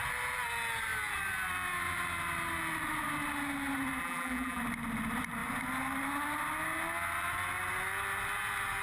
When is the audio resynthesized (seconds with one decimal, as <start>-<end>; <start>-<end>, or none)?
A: 4.0-4.6